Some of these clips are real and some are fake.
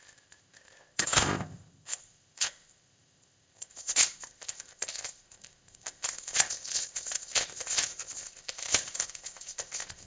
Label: fake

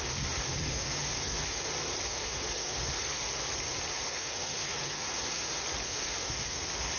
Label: real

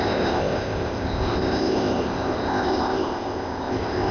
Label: fake